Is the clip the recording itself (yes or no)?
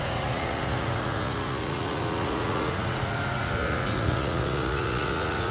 no